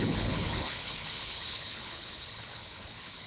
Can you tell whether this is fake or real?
fake